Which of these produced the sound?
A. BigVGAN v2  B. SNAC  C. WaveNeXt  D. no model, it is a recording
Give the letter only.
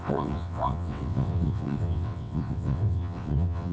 C